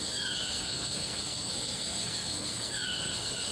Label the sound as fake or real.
fake